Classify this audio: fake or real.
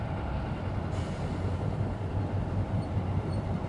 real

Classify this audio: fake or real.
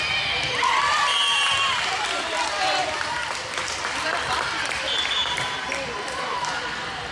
fake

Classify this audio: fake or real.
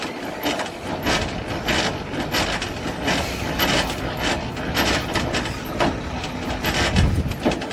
real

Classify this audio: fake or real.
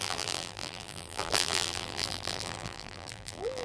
fake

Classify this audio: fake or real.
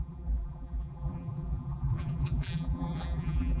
fake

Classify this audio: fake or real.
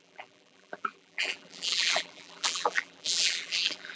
fake